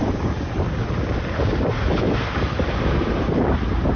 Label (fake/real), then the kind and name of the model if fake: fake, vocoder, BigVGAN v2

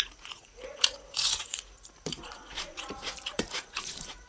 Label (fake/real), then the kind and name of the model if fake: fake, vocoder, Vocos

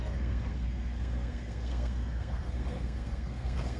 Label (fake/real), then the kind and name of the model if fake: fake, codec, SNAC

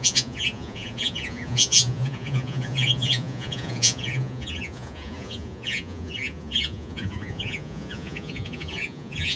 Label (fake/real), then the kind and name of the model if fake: fake, vocoder, Vocos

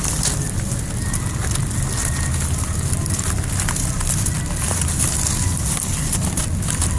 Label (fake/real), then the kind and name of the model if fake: real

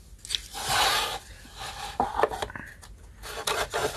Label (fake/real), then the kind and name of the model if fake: real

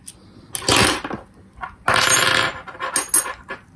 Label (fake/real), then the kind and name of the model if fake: real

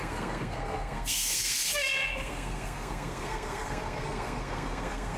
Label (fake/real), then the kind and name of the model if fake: fake, codec, SNAC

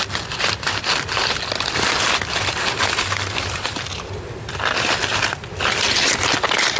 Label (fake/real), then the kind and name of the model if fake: real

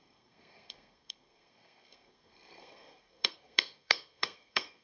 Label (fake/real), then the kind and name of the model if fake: fake, codec, SNAC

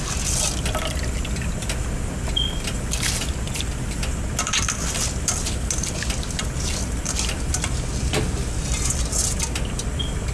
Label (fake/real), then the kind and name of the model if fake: real